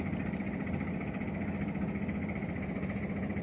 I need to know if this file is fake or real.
real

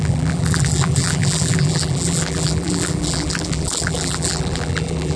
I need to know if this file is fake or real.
fake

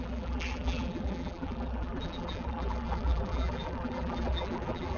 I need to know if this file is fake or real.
fake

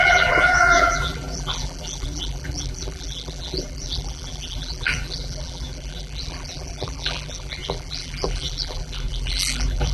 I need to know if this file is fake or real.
fake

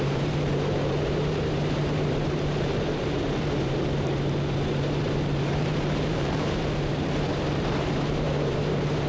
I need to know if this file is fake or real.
fake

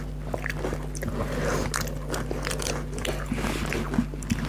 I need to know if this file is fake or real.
real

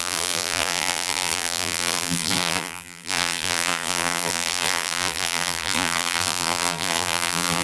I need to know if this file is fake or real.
fake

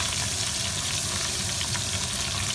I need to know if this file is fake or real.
real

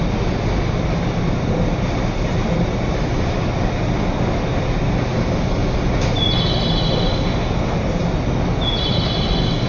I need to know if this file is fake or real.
real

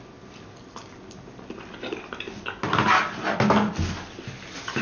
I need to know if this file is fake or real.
real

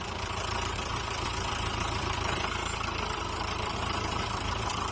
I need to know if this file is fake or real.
fake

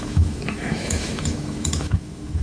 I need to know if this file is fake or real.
fake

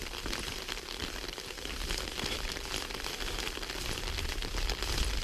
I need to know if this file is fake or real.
real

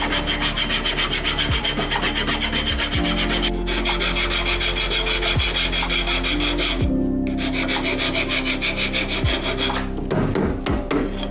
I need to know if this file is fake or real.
real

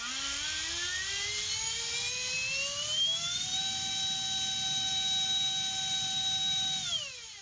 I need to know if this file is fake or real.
real